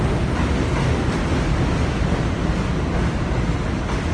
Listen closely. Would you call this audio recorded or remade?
recorded